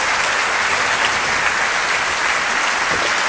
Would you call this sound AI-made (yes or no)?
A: no